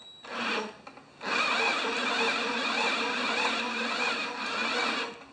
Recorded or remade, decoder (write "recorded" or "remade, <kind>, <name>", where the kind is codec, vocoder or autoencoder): recorded